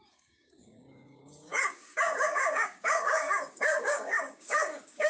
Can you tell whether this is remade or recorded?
remade